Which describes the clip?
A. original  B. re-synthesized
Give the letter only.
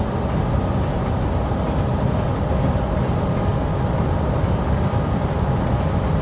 A